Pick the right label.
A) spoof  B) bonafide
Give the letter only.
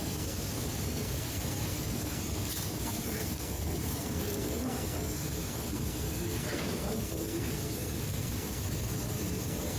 A